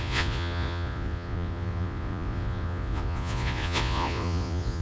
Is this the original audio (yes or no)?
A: no